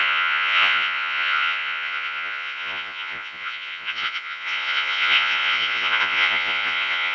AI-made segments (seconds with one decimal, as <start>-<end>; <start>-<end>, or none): 0.0-7.1